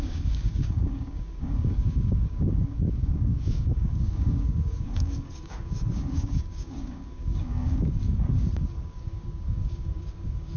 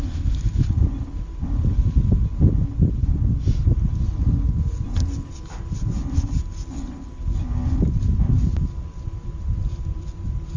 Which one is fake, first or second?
first